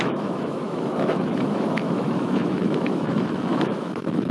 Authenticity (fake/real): fake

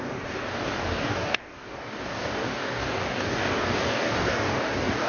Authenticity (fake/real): fake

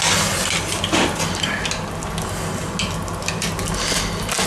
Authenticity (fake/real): real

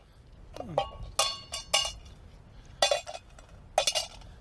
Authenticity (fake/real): real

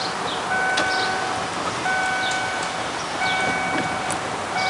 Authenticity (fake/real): real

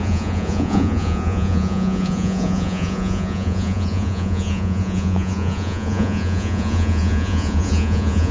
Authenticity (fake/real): fake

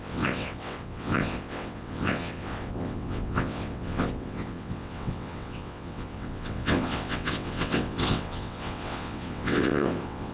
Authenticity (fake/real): fake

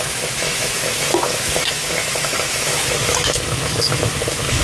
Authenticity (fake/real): fake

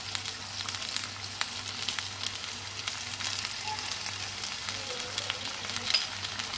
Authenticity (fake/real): real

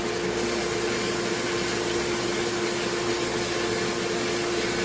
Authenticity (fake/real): real